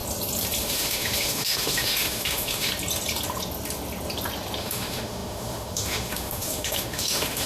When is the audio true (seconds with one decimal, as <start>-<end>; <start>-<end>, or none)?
0.0-0.6; 2.7-4.6

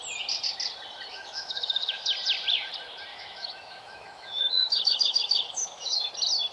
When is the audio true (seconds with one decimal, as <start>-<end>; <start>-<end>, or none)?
0.0-1.1; 2.1-3.1; 6.1-6.5

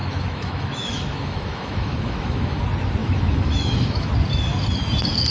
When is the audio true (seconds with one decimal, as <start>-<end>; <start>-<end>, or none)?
2.6-3.0; 4.1-5.3

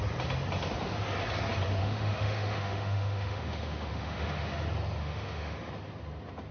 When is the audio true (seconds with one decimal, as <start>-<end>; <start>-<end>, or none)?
0.0-1.8; 4.5-5.0; 5.7-6.5